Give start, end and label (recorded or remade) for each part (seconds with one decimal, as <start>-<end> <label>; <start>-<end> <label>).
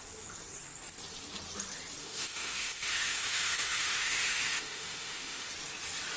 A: 0.0-2.0 recorded; 2.0-5.5 remade; 5.5-6.2 recorded